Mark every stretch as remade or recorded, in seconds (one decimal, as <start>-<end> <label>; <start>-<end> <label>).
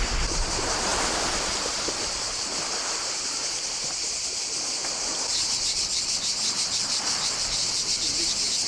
0.0-0.9 recorded; 0.9-1.9 remade; 1.9-8.7 recorded